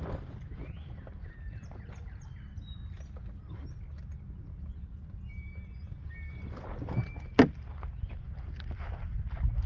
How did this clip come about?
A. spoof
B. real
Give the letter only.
B